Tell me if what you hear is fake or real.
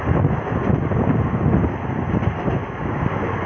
real